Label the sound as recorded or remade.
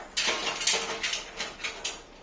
recorded